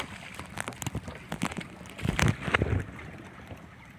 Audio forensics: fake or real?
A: real